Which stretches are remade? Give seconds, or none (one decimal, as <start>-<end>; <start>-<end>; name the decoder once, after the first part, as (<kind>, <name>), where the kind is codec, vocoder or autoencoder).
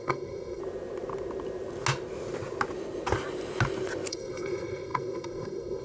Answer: 0.0-0.6 (codec, SNAC); 4.1-5.8